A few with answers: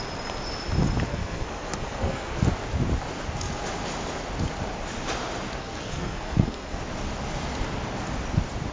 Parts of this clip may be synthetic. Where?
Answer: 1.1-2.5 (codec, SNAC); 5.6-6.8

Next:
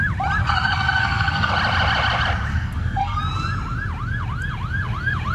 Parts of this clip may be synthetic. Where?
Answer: 0.4-1.5 (codec, SNAC); 2.5-3.2

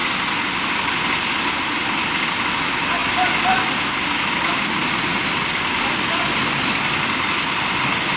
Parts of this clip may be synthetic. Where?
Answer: none

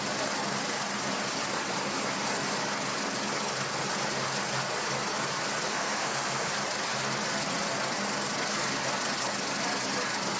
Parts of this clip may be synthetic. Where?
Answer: 5.7-6.5 (codec, SNAC)